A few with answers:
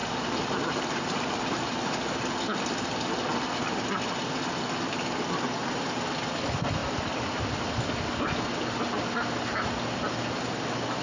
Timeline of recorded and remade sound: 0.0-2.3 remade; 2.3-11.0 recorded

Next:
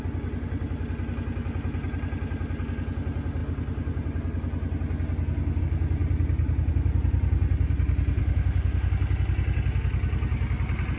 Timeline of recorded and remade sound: 0.0-8.2 recorded; 8.2-8.9 remade; 8.9-11.0 recorded